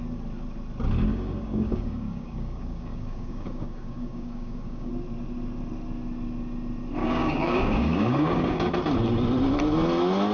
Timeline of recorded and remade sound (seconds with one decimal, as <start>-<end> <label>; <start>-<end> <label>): 0.0-1.1 recorded; 1.1-4.9 remade; 4.9-7.0 recorded; 7.0-8.7 remade; 8.7-10.3 recorded